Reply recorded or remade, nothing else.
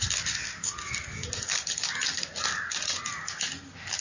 recorded